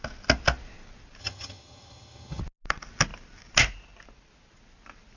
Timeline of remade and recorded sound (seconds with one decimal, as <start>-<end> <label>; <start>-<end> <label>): 0.0-1.2 recorded; 1.2-2.4 remade; 2.4-5.2 recorded